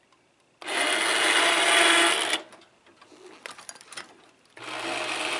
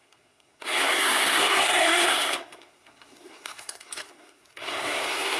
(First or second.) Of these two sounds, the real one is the first